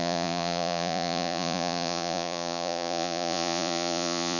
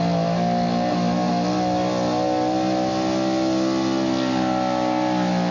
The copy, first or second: first